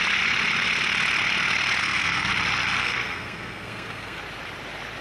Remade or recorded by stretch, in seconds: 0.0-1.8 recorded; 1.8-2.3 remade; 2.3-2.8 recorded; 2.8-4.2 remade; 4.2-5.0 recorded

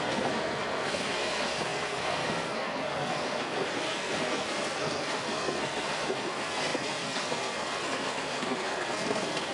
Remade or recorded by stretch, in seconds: 0.0-9.5 remade

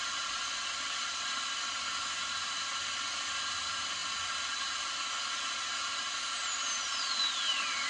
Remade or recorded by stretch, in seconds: 0.0-7.9 recorded

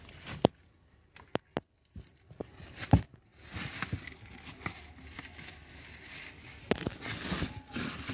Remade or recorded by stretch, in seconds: 0.0-8.1 recorded

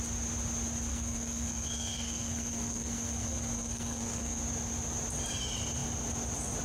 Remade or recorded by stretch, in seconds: 0.0-0.9 recorded; 0.9-4.4 remade; 4.4-6.6 recorded

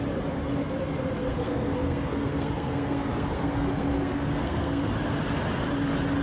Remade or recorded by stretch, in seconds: 0.0-1.2 recorded; 1.2-4.9 remade; 4.9-6.2 recorded